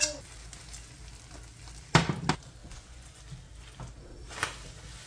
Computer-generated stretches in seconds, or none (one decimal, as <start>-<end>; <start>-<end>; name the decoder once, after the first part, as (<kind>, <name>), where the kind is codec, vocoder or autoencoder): 2.6-3.2 (vocoder, Vocos)